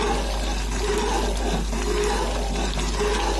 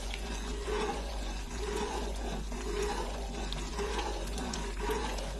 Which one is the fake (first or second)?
second